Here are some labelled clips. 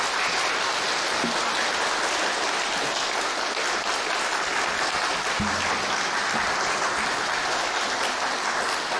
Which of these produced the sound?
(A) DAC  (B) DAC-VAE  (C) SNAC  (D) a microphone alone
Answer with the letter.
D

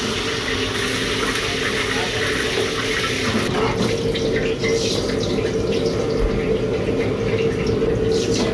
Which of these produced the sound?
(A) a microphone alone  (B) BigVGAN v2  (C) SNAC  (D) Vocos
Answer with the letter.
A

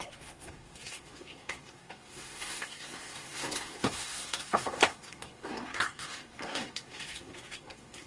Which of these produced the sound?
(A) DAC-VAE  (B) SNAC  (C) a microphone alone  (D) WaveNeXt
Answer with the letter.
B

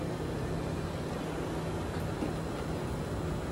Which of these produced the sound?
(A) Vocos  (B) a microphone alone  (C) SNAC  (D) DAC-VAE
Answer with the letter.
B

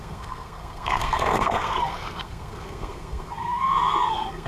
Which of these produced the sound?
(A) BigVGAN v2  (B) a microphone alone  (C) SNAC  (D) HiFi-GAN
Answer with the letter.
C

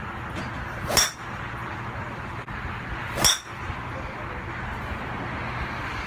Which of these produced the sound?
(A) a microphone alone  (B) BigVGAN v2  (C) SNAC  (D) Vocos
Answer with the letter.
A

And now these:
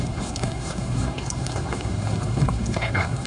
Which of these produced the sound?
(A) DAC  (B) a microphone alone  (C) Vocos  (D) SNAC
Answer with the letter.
D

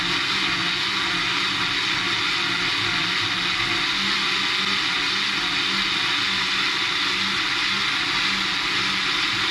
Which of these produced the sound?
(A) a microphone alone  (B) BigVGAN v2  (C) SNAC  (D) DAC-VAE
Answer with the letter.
A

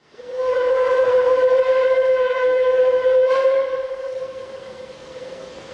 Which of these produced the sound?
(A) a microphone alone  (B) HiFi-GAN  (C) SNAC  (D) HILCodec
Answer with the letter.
C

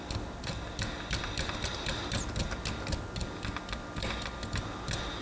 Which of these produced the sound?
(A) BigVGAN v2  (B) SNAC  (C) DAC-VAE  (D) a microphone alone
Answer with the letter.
D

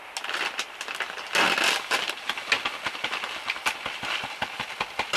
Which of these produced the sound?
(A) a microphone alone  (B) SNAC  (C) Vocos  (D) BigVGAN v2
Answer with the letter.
A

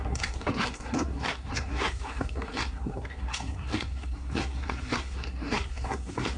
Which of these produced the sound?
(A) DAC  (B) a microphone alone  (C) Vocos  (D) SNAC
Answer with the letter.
D